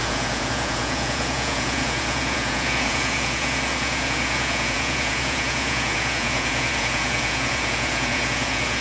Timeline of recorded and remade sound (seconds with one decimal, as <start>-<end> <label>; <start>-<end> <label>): 0.0-8.8 remade